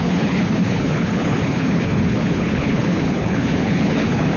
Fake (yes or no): yes